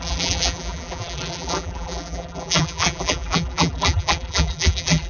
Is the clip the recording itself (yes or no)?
no